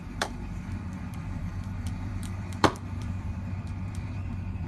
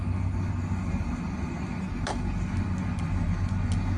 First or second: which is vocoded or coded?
first